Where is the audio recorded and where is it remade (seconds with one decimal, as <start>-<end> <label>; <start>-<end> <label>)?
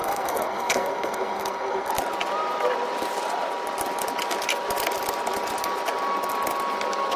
0.0-1.9 remade; 1.9-7.2 recorded